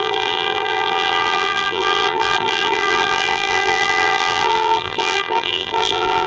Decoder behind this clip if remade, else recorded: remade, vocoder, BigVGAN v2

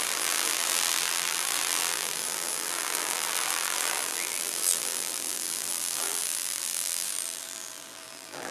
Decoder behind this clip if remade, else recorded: remade, vocoder, BigVGAN v2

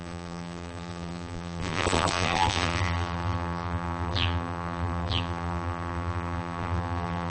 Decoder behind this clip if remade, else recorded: remade, vocoder, BigVGAN v2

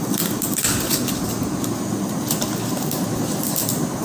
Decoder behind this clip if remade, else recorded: recorded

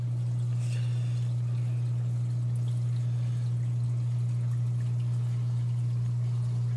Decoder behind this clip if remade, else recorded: recorded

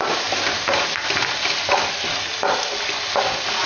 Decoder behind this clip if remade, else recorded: recorded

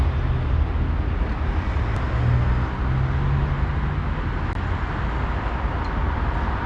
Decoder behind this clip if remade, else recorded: recorded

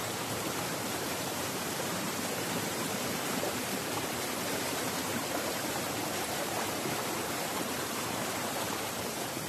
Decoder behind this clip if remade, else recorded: remade, vocoder, BigVGAN v2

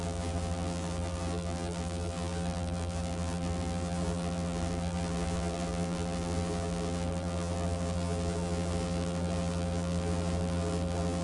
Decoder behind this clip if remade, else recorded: remade, vocoder, BigVGAN v2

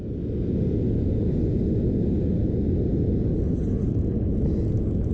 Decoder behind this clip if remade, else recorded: recorded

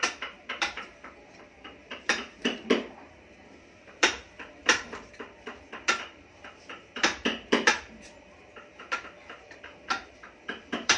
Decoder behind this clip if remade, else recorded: remade, vocoder, BigVGAN v2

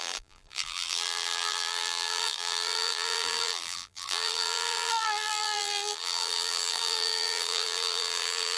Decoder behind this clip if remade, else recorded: remade, vocoder, BigVGAN v2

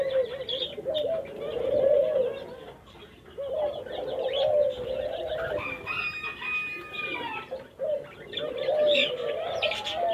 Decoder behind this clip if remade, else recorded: recorded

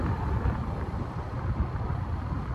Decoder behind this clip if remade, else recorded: recorded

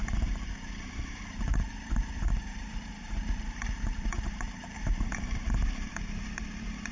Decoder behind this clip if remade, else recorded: remade, vocoder, BigVGAN v2